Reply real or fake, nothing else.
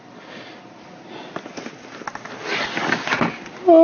real